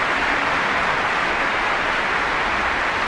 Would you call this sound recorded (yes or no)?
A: yes